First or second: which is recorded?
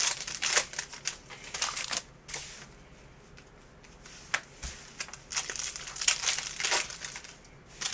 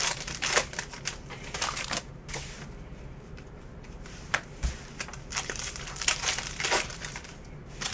first